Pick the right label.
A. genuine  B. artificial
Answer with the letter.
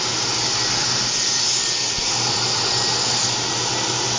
A